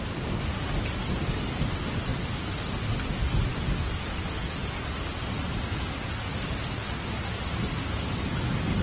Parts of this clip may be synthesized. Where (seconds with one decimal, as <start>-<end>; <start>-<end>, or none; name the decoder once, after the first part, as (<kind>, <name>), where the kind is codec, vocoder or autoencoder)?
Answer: none